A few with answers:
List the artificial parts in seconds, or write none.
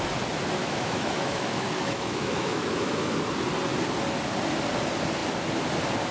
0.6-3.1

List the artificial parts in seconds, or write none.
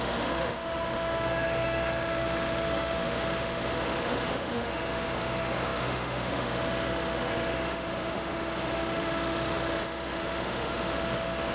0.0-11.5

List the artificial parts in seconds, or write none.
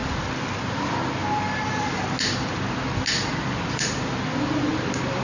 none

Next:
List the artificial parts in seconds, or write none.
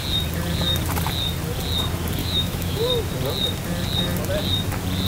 2.2-2.9